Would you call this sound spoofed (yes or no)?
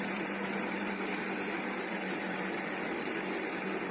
yes